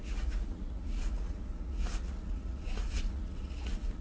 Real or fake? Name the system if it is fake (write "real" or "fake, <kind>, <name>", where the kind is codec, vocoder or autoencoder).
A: fake, vocoder, Vocos